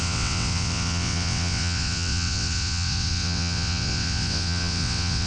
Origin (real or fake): fake